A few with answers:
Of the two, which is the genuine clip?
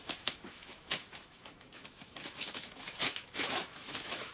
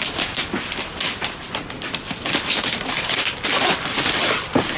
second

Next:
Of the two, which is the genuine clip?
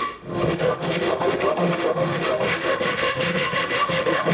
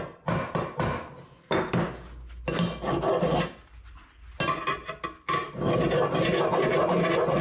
second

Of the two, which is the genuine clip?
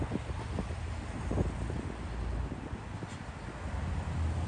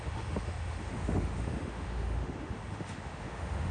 first